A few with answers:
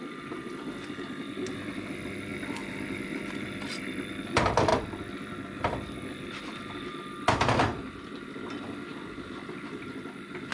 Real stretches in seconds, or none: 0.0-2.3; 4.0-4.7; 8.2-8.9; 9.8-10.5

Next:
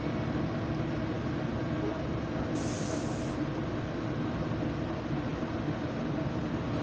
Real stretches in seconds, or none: 0.0-6.8

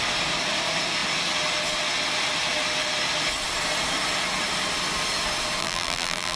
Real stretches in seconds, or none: 0.0-5.6

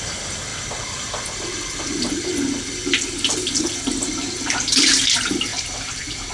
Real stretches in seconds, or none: 0.0-5.5